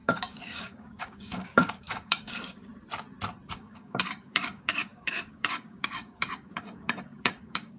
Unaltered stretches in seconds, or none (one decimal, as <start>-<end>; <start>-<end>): 2.7-3.5